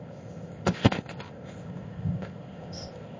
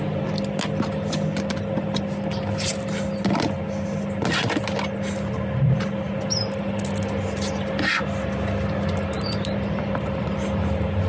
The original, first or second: second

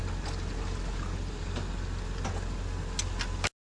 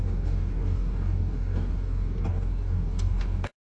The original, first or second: first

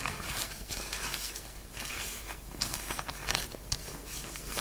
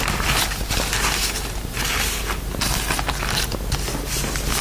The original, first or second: second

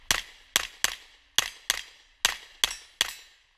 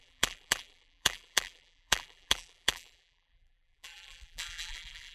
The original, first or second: first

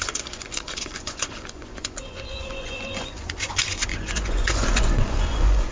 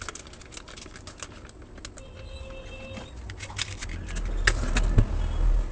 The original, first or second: second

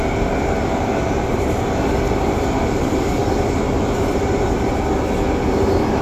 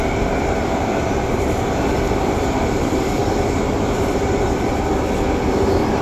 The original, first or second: first